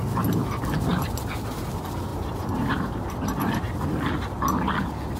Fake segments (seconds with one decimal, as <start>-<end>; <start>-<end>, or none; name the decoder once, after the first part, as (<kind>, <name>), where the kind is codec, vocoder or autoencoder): 2.1-3.6 (vocoder, BigVGAN v2)